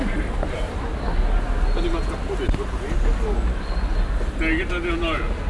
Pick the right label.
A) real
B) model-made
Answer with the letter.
A